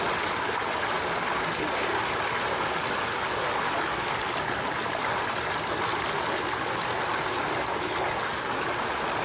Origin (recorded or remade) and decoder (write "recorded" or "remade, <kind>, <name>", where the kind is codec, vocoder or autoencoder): recorded